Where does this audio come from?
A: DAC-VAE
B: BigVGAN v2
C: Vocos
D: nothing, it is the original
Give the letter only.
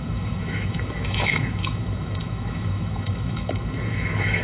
A